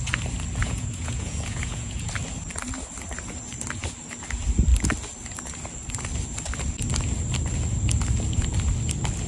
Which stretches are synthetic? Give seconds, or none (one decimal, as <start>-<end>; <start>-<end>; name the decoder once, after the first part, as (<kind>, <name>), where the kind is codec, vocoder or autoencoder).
0.6-2.1 (vocoder, Vocos)